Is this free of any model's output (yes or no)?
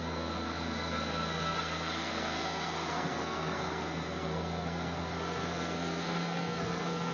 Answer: no